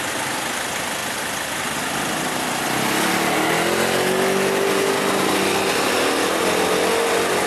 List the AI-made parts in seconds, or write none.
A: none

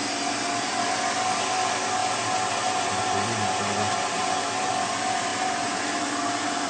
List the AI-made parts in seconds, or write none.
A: none

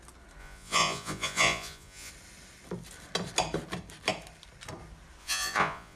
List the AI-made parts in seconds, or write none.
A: 0.4-2.1 (vocoder, Vocos); 5.2-6.0

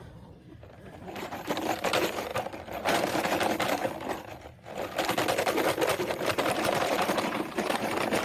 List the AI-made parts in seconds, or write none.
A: 0.0-3.8 (vocoder, BigVGAN v2); 6.0-8.2

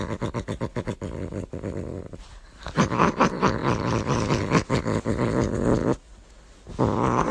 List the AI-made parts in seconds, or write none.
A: 0.7-3.0 (vocoder, BigVGAN v2); 3.6-4.4